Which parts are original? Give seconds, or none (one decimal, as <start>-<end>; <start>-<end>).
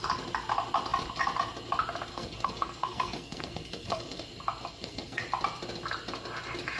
0.0-2.1; 4.2-4.7; 5.2-6.8